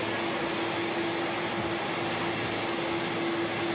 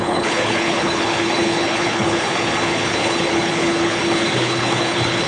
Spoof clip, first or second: second